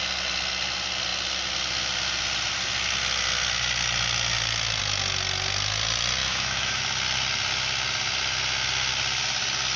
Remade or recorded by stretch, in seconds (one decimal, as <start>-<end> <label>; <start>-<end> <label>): 0.0-6.2 recorded; 6.2-6.8 remade; 6.8-9.8 recorded